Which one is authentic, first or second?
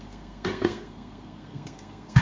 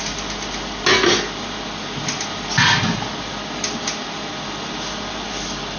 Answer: second